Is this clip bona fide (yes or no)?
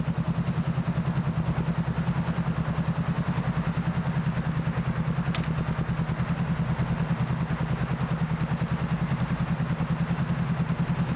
yes